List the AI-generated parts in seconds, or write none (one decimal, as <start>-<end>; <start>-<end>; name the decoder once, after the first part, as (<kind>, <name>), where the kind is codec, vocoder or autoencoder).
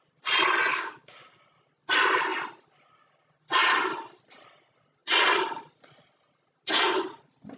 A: 0.7-1.4 (codec, DAC)